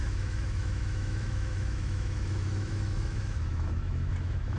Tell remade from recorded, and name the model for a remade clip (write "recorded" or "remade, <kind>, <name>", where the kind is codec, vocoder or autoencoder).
remade, autoencoder, DAC-VAE